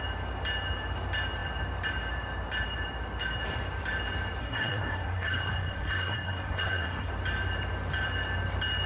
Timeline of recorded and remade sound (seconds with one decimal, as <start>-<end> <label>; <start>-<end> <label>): 0.0-4.4 recorded; 4.4-7.1 remade; 7.1-8.9 recorded